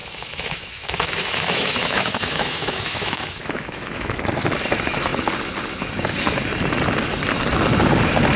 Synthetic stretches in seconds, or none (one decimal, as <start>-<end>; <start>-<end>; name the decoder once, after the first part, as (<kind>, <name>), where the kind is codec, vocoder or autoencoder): 0.0-4.2 (autoencoder, DAC-VAE)